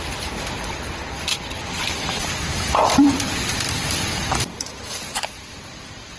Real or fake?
fake